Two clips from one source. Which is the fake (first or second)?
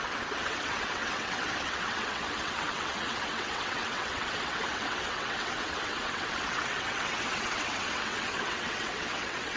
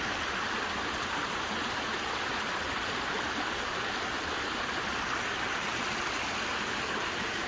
first